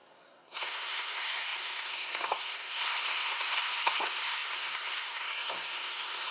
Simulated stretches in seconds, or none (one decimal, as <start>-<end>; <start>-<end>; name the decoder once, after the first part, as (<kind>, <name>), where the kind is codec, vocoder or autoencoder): 0.0-6.3 (codec, SNAC)